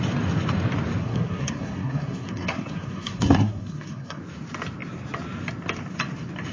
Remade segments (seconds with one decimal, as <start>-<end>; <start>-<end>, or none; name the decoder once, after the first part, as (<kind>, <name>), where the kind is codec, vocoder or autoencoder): 1.0-4.2 (codec, SNAC)